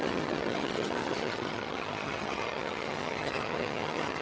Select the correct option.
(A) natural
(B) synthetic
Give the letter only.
B